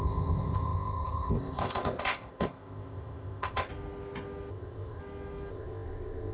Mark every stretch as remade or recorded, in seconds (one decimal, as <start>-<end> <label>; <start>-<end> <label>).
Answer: 0.0-3.7 remade; 3.7-4.5 recorded; 4.5-5.0 remade; 5.0-5.5 recorded; 5.5-6.3 remade